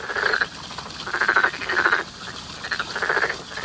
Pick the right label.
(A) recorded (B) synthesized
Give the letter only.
A